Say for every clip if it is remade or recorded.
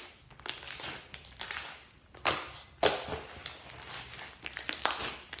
recorded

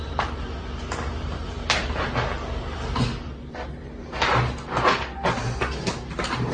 recorded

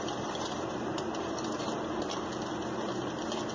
recorded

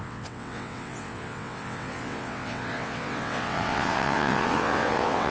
remade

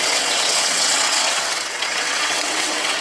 remade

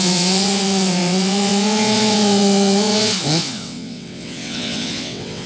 remade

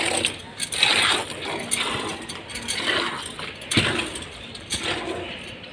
recorded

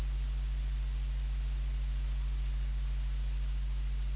recorded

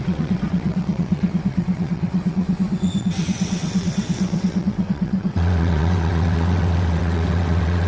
remade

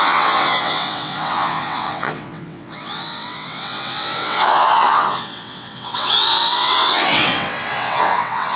remade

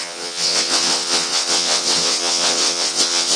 remade